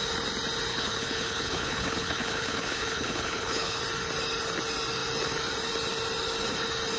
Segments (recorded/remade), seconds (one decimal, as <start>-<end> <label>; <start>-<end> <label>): 0.0-0.7 recorded; 0.7-3.8 remade; 3.8-7.0 recorded